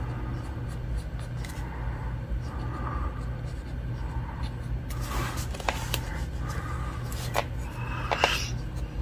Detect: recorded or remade recorded